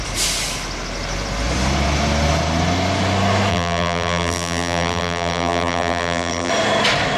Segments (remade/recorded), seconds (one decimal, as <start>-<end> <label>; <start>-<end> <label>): 0.0-3.5 recorded; 3.5-6.5 remade; 6.5-7.2 recorded